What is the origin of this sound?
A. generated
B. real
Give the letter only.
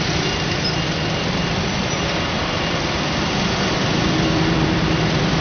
A